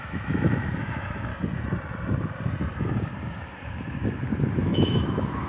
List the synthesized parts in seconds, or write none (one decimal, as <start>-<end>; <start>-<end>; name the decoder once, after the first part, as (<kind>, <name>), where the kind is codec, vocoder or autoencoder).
0.0-1.3 (autoencoder, DAC-VAE); 4.6-5.5